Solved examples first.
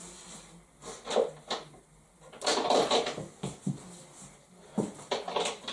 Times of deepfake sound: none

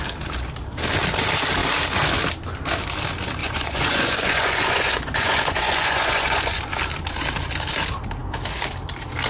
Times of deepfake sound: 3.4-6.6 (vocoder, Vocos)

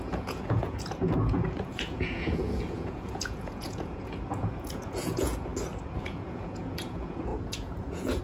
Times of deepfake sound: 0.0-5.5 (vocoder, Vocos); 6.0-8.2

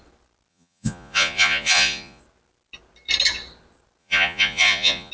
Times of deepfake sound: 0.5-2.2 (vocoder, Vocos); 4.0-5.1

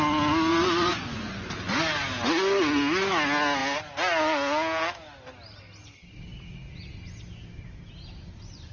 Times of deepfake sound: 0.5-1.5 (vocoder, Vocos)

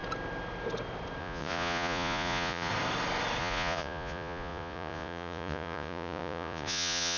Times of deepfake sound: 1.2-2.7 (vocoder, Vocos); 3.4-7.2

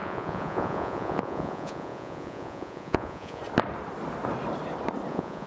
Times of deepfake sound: 0.0-3.4 (vocoder, Vocos); 5.1-5.5